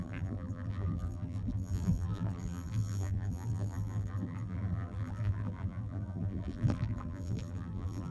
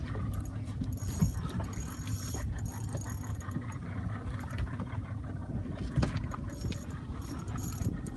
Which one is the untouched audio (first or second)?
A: second